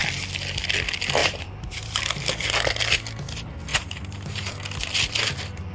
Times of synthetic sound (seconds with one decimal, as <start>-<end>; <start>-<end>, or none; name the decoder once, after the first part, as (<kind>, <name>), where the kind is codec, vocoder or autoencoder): 1.2-2.2 (vocoder, BigVGAN v2); 3.7-4.5